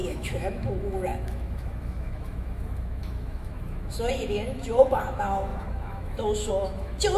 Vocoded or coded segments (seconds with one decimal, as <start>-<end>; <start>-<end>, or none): 0.0-7.2